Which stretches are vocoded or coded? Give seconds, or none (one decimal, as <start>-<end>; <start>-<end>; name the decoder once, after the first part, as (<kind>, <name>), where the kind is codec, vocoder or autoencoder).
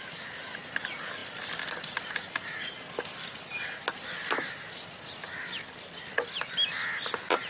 none